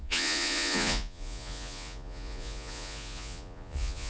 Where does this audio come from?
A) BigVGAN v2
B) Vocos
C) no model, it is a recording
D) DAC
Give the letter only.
B